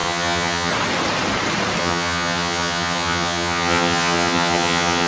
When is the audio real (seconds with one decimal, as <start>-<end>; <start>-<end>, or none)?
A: 0.7-1.8